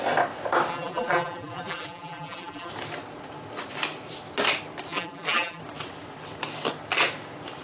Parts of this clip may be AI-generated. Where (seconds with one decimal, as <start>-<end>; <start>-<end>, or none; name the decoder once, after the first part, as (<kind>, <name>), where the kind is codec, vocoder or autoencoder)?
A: 0.7-2.7 (vocoder, BigVGAN v2); 4.9-5.6